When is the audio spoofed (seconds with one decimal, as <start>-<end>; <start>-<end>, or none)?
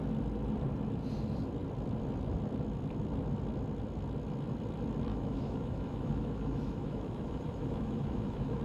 5.1-8.6